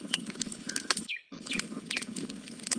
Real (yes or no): no